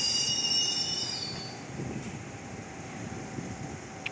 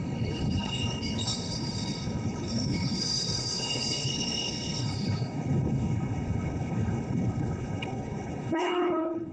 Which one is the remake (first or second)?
second